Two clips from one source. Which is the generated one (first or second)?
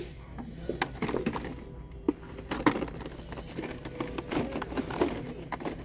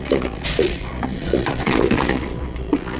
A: second